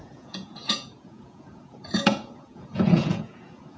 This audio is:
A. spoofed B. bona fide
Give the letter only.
A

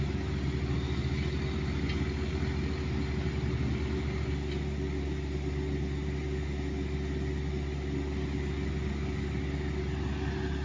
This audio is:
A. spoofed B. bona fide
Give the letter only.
B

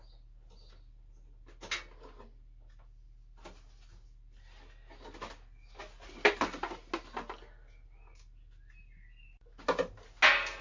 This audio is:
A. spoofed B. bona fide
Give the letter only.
B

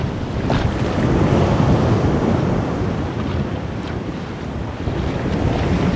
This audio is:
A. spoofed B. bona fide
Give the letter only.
A